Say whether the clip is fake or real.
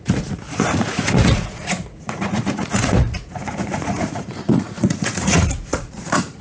fake